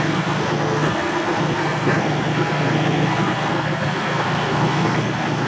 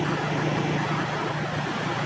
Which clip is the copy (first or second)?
first